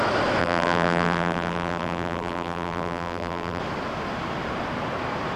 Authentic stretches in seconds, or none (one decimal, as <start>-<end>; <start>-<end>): 0.0-0.4; 3.6-5.4